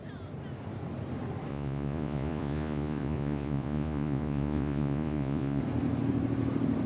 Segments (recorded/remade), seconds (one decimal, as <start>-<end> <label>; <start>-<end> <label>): 0.0-1.5 recorded; 1.5-5.6 remade; 5.6-6.9 recorded